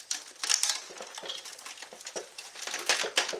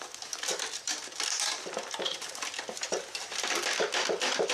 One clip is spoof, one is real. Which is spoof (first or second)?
second